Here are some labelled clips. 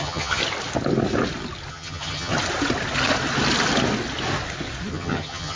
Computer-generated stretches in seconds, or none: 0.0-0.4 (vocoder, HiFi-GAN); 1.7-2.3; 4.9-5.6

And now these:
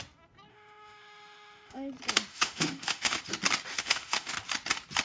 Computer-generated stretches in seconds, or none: 0.5-1.9 (autoencoder, DAC-VAE); 2.3-3.2; 3.7-4.3

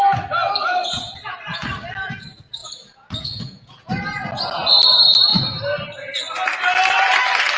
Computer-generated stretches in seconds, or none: 0.8-1.6 (vocoder, Vocos); 2.6-3.9

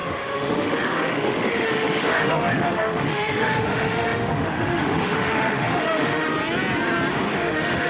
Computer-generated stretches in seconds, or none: 0.0-6.3 (autoencoder, DAC-VAE); 7.1-7.9

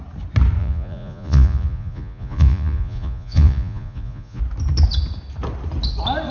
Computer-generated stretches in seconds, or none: 0.6-4.4 (vocoder, Vocos)

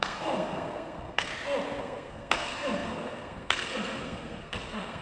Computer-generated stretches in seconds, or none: 0.0-1.3 (codec, SNAC); 1.8-5.0

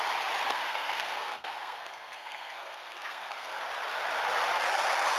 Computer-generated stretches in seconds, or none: 0.5-3.6 (codec, SNAC)

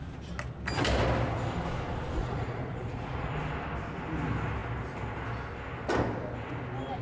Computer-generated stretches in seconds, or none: 2.2-3.3 (vocoder, Vocos)